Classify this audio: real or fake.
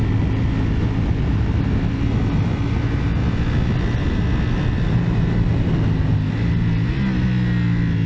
real